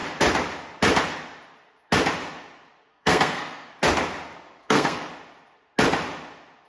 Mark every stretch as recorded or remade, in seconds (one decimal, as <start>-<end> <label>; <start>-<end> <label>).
0.0-2.9 recorded; 2.9-3.7 remade; 3.7-4.6 recorded; 4.6-5.1 remade; 5.1-6.7 recorded